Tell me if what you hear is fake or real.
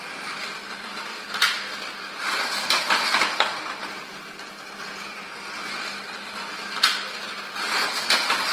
real